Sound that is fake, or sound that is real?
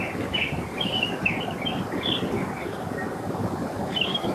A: fake